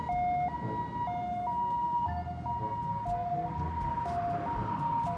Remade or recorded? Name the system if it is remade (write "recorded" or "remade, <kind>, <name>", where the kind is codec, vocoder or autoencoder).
recorded